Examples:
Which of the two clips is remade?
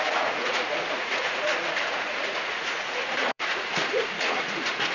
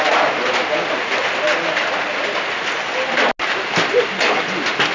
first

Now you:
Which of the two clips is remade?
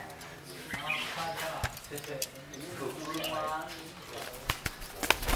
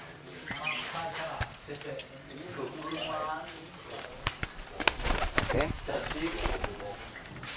second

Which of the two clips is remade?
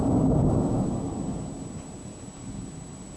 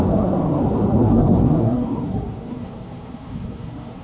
second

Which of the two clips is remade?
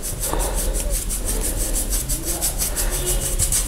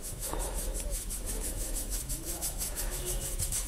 second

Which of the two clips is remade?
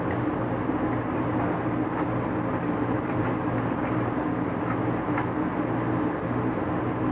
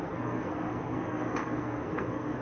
second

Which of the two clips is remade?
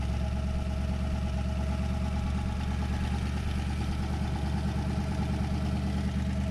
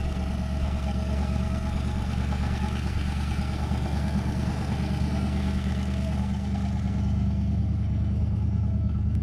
second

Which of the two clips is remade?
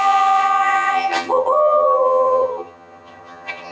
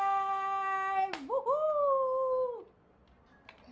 first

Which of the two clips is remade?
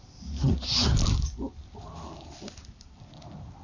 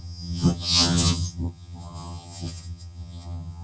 second